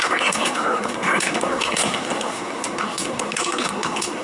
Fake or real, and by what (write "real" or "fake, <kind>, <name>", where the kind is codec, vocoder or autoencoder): fake, codec, SNAC